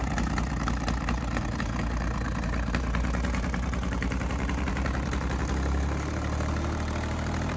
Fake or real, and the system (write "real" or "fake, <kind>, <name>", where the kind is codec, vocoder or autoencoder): fake, vocoder, BigVGAN v2